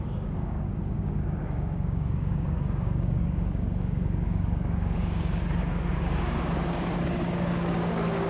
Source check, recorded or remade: remade